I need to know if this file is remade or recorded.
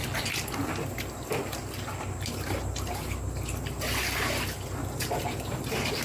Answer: recorded